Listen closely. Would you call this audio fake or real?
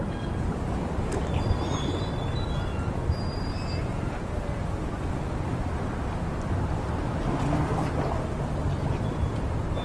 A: real